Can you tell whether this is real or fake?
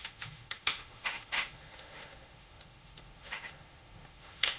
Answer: fake